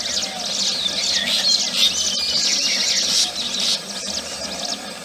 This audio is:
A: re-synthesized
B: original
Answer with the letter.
B